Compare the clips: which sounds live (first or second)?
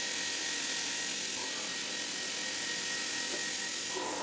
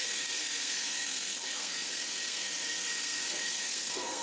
first